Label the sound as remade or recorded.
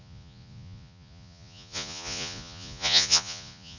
remade